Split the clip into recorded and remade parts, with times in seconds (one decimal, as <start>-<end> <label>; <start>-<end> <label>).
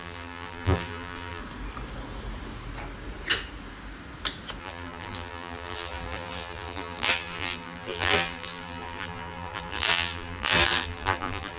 0.0-1.4 remade; 1.4-4.6 recorded; 4.6-11.6 remade